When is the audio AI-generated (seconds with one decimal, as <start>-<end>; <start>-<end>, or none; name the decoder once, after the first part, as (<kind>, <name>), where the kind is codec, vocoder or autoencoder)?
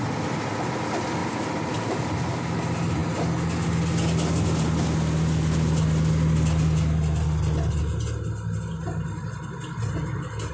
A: 1.2-2.0 (vocoder, BigVGAN v2)